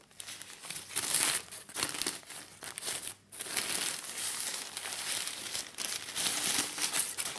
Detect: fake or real real